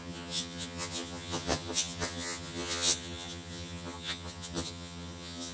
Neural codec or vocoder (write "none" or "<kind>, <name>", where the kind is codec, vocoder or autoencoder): vocoder, HiFi-GAN